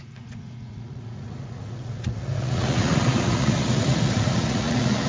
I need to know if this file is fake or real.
fake